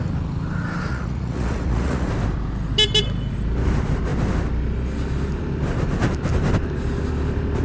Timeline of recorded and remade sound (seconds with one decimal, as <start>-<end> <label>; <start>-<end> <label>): 0.0-0.9 recorded; 0.9-2.1 remade; 2.1-7.6 recorded